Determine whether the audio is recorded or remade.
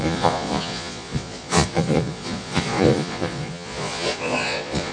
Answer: remade